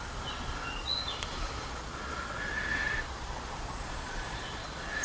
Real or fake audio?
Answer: fake